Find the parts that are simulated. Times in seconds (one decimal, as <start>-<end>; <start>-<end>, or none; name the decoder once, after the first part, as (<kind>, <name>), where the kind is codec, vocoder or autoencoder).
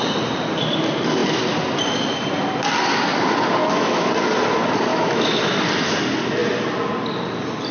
3.6-4.1 (autoencoder, DAC-VAE); 4.9-5.4